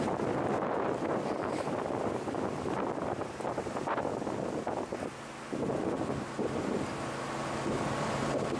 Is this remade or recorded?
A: recorded